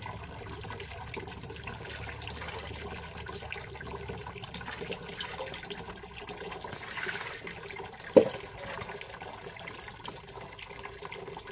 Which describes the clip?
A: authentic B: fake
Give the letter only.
A